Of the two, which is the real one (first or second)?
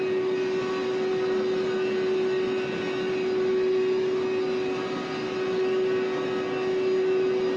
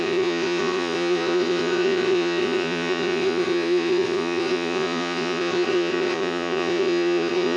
first